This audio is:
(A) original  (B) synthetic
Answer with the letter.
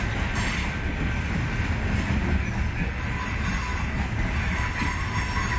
A